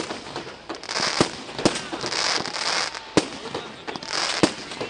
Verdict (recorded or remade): recorded